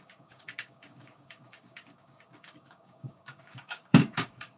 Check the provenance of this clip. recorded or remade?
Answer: remade